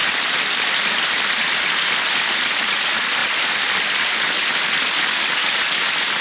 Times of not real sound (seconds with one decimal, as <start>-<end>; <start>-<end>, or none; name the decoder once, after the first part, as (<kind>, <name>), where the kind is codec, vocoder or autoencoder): 0.0-1.6 (vocoder, BigVGAN v2)